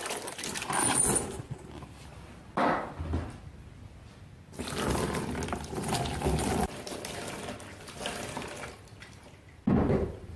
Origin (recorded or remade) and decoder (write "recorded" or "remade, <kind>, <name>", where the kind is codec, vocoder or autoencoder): recorded